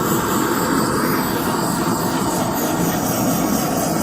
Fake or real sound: real